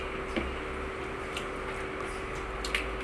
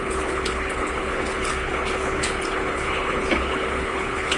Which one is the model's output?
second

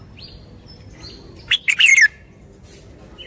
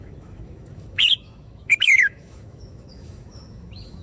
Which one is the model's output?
second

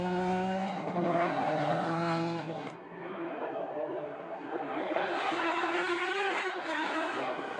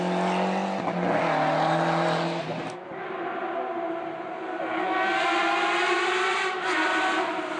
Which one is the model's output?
first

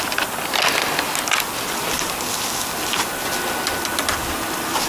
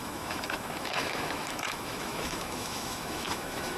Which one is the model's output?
second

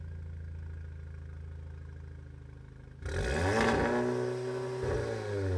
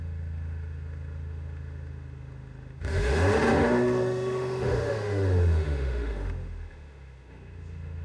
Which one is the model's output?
second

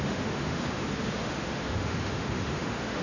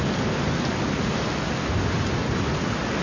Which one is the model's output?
first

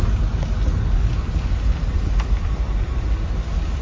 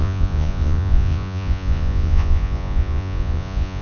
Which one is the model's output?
second